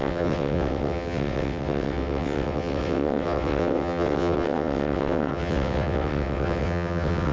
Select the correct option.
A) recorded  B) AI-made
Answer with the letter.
B